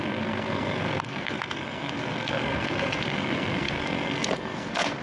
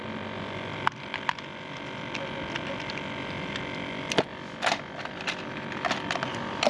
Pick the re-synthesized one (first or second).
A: first